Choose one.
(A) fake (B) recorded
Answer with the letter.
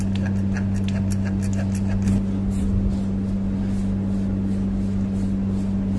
B